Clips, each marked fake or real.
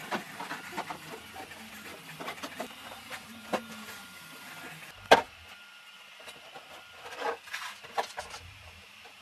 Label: real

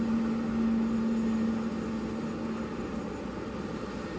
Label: real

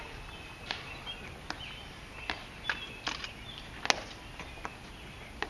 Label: real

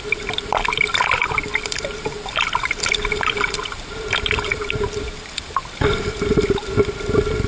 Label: fake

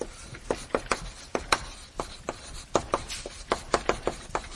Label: fake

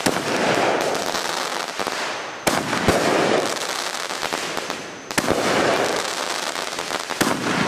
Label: real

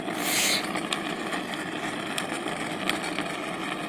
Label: real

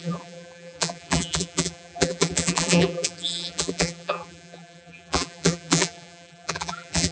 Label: fake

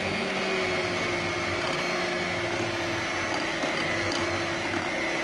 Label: real